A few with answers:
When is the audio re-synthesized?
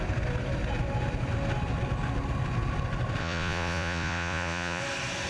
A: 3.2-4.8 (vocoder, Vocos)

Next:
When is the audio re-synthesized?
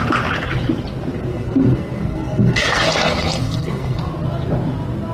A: 1.3-4.1 (codec, SNAC)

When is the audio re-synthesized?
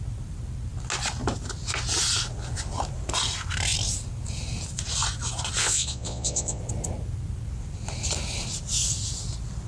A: 5.6-6.6 (vocoder, Vocos)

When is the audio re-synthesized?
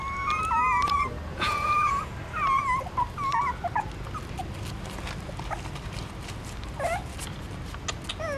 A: 1.3-2.0 (vocoder, Vocos)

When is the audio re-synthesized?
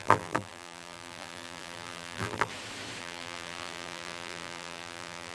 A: 0.0-2.5 (vocoder, BigVGAN v2); 3.0-5.3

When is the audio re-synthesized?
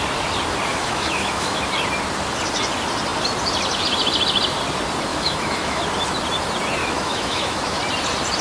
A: 0.7-1.6 (autoencoder, DAC-VAE); 5.1-5.8; 6.8-7.8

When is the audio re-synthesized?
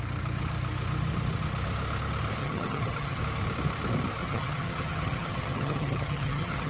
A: 2.4-3.2 (vocoder, HiFi-GAN); 4.2-6.7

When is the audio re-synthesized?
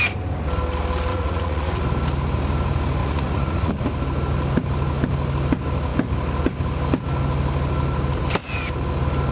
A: 1.1-1.8 (vocoder, Vocos); 3.0-3.7